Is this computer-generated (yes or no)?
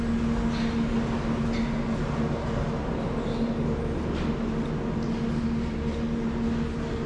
no